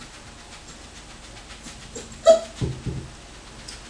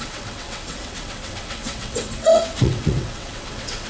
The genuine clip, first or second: first